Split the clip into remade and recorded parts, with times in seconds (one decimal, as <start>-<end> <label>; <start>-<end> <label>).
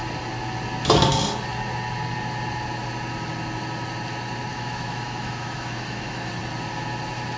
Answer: 0.0-4.5 recorded; 4.5-6.3 remade; 6.3-7.4 recorded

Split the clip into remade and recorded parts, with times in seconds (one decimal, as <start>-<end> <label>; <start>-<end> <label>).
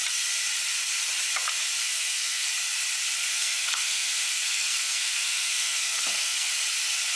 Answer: 0.0-1.8 recorded; 1.8-2.5 remade; 2.5-3.3 recorded; 3.3-6.5 remade; 6.5-7.2 recorded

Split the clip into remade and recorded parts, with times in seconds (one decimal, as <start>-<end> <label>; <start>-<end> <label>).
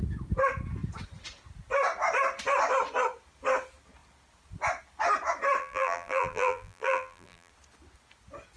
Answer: 0.0-5.6 recorded; 5.6-7.5 remade; 7.5-8.6 recorded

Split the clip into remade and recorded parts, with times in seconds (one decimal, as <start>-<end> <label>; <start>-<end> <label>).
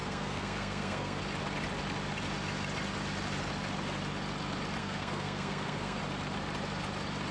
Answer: 0.0-1.2 remade; 1.2-4.8 recorded; 4.8-6.0 remade; 6.0-7.3 recorded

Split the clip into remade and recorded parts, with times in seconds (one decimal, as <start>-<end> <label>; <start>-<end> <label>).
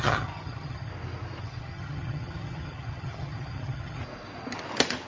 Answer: 0.0-0.9 remade; 0.9-1.4 recorded; 1.4-4.0 remade; 4.0-5.1 recorded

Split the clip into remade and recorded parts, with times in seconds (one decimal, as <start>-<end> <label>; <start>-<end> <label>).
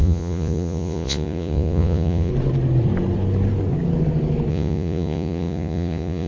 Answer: 0.0-2.3 remade; 2.3-4.5 recorded; 4.5-6.3 remade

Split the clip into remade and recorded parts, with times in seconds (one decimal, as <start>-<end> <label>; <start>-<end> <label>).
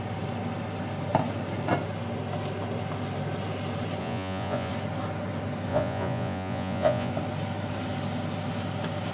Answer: 0.0-4.0 recorded; 4.0-4.7 remade; 4.7-5.7 recorded; 5.7-7.1 remade; 7.1-9.1 recorded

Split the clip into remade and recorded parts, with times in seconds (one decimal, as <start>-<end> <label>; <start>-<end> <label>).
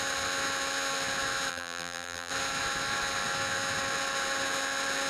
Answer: 0.0-1.5 recorded; 1.5-2.3 remade; 2.3-5.1 recorded